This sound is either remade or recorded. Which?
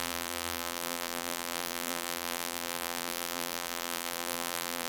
remade